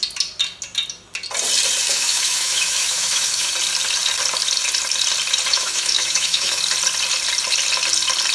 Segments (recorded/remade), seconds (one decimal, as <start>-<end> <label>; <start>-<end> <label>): 0.0-1.9 recorded; 1.9-3.5 remade; 3.5-5.5 recorded; 5.5-6.6 remade; 6.6-8.3 recorded